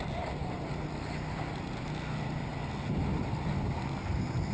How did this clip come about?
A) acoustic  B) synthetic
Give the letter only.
A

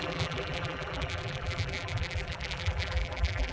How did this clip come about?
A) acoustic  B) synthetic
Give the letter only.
B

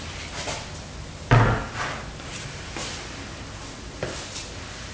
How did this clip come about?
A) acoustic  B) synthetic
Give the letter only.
A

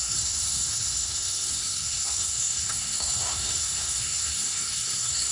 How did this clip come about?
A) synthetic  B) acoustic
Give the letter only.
A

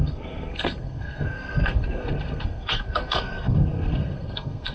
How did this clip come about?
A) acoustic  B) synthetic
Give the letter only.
B